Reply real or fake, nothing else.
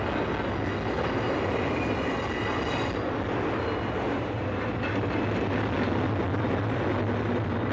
real